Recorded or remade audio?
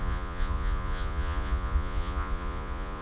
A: remade